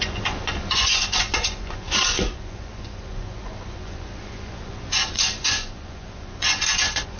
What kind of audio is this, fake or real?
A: fake